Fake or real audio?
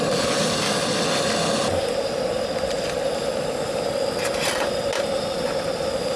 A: real